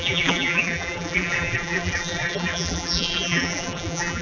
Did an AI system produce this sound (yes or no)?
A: yes